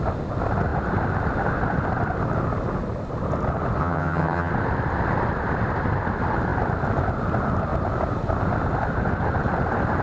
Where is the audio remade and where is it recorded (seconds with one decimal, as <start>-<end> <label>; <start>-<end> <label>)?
0.0-3.8 recorded; 3.8-4.5 remade; 4.5-10.0 recorded